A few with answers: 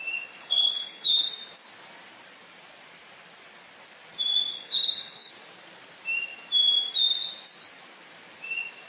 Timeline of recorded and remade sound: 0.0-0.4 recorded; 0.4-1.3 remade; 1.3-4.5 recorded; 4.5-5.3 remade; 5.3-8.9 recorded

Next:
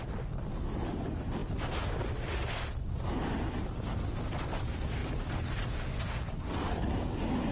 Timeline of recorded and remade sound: 0.0-7.5 recorded

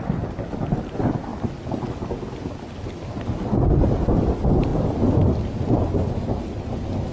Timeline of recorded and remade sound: 0.0-7.1 recorded